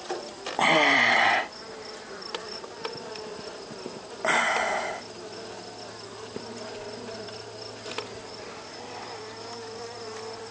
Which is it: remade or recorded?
recorded